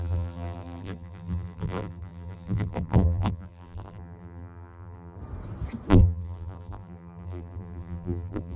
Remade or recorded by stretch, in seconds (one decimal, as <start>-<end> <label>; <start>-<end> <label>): 0.0-5.2 remade; 5.2-5.9 recorded; 5.9-8.6 remade